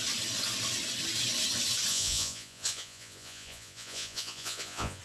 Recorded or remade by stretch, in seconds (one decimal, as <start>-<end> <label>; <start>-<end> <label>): 0.0-1.9 recorded; 1.9-5.0 remade